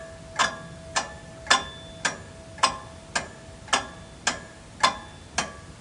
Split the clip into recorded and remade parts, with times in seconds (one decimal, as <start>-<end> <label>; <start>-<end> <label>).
0.0-5.8 recorded

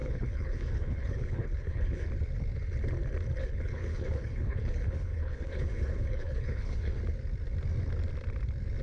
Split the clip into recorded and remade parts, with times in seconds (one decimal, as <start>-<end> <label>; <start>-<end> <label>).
0.0-2.1 remade; 2.1-3.4 recorded; 3.4-7.0 remade; 7.0-8.8 recorded

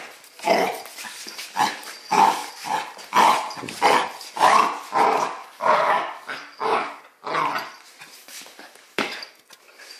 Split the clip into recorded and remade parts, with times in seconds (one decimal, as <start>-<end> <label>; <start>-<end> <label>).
0.0-2.0 recorded; 2.0-2.5 remade; 2.5-5.4 recorded; 5.4-7.0 remade; 7.0-8.2 recorded; 8.2-9.3 remade; 9.3-10.0 recorded

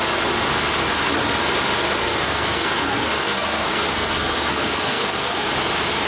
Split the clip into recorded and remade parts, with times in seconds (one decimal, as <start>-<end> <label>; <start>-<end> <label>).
0.0-2.0 recorded; 2.0-5.5 remade; 5.5-6.1 recorded

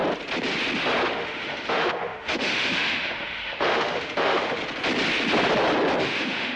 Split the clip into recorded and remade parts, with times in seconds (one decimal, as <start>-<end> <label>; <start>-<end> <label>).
0.0-1.1 recorded; 1.1-4.6 remade; 4.6-6.0 recorded; 6.0-6.6 remade

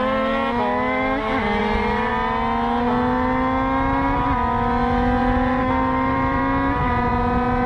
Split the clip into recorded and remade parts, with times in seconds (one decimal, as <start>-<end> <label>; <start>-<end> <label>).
0.0-1.6 recorded; 1.6-2.1 remade; 2.1-5.2 recorded; 5.2-6.4 remade; 6.4-7.7 recorded